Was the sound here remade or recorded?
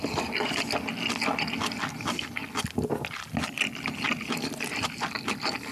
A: recorded